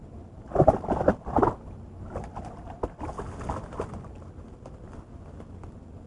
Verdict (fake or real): real